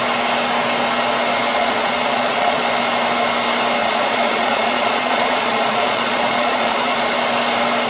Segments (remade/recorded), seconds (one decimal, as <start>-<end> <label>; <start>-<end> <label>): 0.0-1.5 recorded; 1.5-2.6 remade; 2.6-3.8 recorded; 3.8-7.0 remade; 7.0-7.9 recorded